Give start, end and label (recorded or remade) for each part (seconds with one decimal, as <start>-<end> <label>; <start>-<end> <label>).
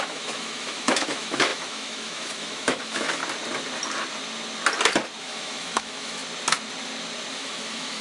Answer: 0.0-3.2 remade; 3.2-5.2 recorded; 5.2-6.2 remade; 6.2-7.3 recorded; 7.3-8.0 remade